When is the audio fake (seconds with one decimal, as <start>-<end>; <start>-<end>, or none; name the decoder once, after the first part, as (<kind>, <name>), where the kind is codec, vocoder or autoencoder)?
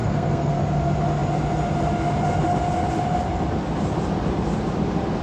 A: 0.0-0.6 (codec, SNAC)